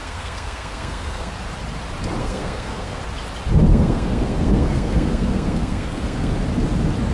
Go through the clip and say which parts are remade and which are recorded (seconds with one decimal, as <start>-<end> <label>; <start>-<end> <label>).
0.0-1.3 remade; 1.3-2.2 recorded; 2.2-3.0 remade; 3.0-3.7 recorded; 3.7-6.3 remade; 6.3-7.1 recorded